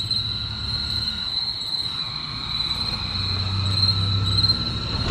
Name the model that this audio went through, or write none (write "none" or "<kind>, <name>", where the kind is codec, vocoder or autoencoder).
none